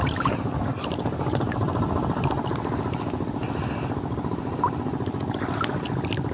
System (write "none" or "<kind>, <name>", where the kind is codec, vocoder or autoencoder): none